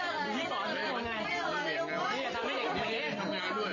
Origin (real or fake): real